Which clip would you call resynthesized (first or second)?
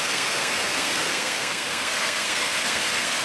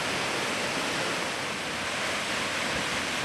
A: first